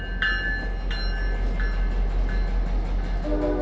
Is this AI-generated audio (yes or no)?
no